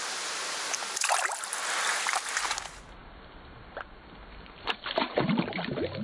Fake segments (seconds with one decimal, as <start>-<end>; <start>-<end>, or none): none